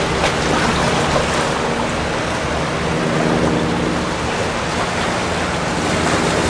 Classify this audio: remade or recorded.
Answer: recorded